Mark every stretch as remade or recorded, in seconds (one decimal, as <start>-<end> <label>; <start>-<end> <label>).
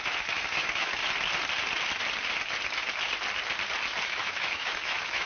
0.0-1.0 remade; 1.0-4.0 recorded; 4.0-5.3 remade